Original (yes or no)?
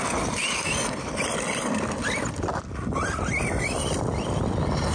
yes